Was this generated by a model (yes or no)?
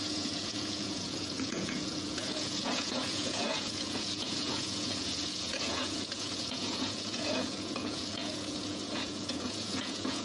yes